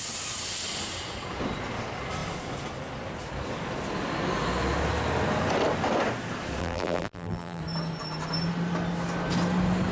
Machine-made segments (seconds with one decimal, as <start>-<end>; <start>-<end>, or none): 6.6-7.6